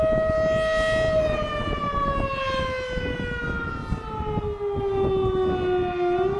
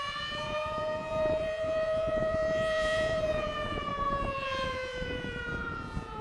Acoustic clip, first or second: first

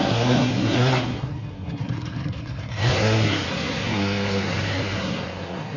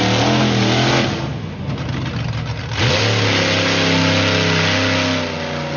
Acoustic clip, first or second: second